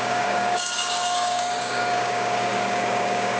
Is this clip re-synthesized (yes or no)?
yes